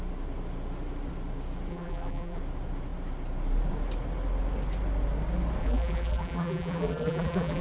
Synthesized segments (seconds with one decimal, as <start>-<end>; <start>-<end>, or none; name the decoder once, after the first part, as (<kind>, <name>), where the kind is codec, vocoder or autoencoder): 1.7-2.4 (vocoder, BigVGAN v2); 5.6-7.6